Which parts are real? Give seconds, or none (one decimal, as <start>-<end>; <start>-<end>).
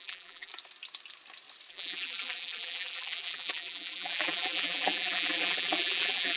0.5-1.7